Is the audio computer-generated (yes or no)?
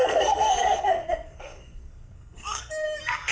yes